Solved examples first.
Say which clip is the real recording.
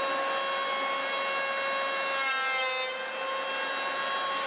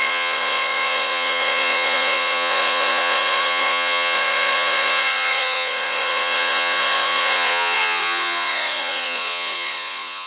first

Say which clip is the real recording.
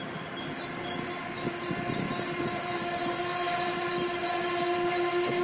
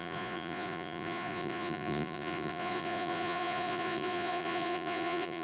first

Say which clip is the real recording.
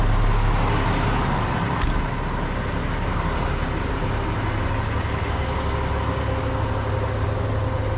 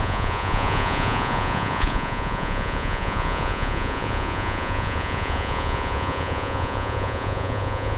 first